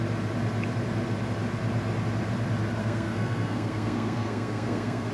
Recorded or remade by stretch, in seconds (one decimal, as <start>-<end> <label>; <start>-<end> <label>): 0.0-2.8 recorded; 2.8-5.1 remade